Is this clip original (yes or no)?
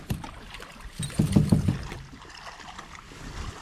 yes